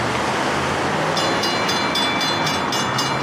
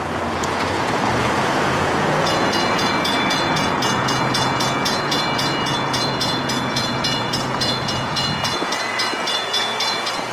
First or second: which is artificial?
second